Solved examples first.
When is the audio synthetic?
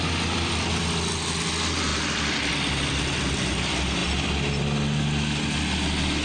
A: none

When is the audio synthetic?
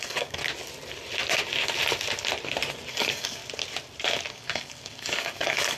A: 0.0-0.4; 2.9-3.4; 4.3-5.8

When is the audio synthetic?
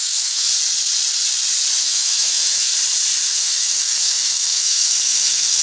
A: 0.0-0.5; 1.8-2.7; 3.3-5.6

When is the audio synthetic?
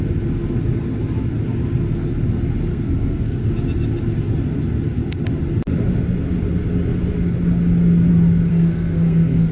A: 2.7-3.5; 8.5-9.5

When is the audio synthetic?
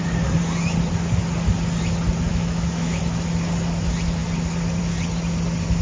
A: 2.3-3.0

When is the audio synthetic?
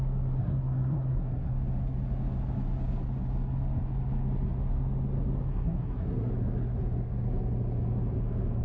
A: 0.4-1.5; 5.5-6.3